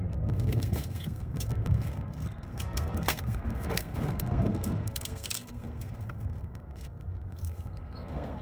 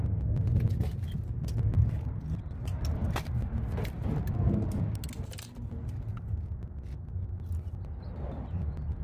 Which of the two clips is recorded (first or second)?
second